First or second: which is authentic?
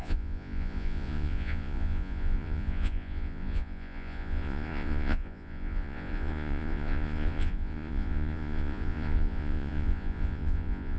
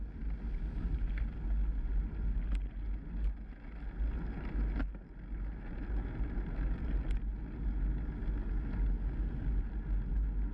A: second